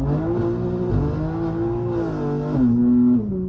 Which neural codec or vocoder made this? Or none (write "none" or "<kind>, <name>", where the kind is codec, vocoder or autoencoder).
none